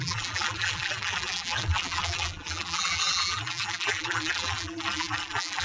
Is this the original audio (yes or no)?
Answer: no